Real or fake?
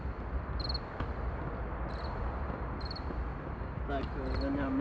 real